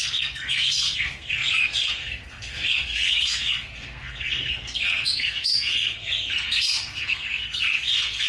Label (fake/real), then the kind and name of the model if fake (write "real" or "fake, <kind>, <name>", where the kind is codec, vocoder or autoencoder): fake, codec, SNAC